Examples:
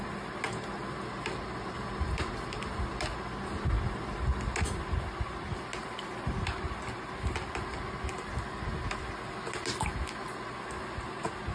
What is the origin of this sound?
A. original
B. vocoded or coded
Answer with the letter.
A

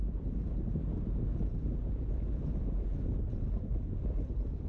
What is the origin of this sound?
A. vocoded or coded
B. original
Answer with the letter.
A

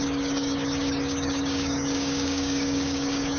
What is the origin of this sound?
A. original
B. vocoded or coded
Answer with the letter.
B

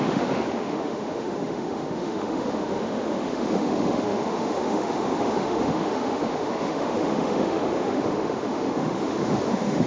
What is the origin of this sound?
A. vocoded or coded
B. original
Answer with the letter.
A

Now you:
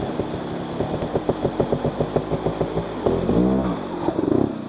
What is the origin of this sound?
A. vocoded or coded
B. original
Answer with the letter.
B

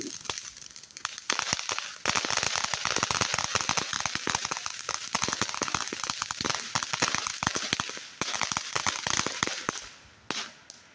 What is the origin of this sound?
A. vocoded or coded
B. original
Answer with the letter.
B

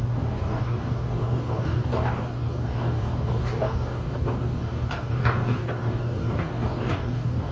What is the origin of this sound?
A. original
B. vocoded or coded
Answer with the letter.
B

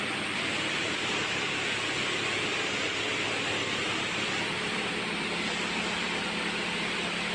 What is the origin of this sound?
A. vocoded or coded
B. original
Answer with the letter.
A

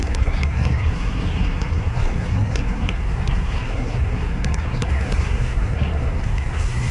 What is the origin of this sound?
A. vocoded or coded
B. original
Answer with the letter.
A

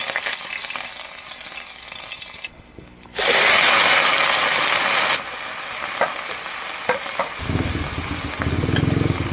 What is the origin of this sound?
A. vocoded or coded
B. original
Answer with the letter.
B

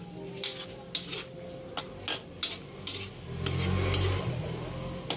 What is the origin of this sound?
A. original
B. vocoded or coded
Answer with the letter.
A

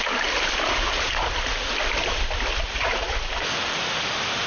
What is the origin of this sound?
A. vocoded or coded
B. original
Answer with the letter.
B